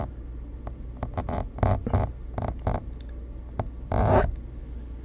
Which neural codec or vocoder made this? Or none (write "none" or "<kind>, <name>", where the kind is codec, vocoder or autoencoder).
none